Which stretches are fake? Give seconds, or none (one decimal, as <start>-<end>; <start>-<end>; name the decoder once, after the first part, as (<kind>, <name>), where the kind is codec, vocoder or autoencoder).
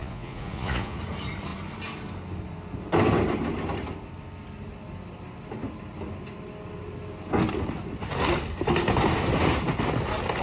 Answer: 0.0-1.0 (vocoder, Vocos)